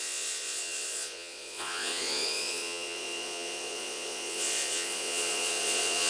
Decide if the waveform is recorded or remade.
remade